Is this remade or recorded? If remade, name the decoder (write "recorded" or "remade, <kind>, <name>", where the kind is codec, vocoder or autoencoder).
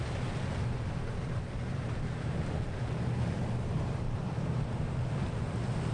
remade, vocoder, BigVGAN v2